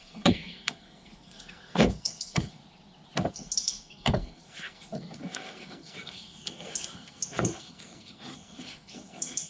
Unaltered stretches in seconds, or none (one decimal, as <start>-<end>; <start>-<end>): 2.6-3.3

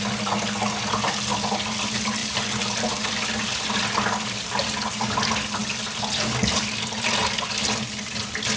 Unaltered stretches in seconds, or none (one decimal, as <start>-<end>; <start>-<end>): 0.0-8.6

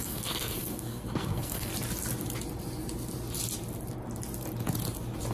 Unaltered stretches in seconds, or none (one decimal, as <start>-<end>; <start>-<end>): 1.7-5.3

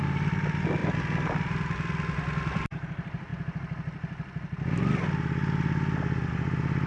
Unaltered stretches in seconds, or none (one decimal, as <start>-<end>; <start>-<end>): 0.0-6.9

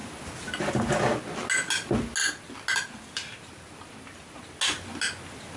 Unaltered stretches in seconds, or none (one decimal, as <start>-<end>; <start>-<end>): 0.0-5.6